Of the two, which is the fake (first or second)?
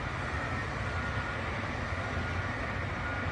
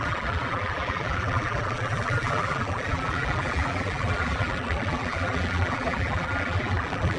second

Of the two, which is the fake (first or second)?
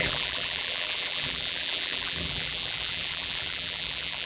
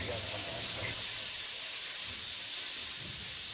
first